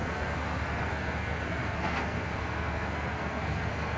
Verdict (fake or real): fake